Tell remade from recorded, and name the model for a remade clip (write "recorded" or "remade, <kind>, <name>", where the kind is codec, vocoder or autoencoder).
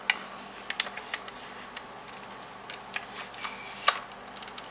recorded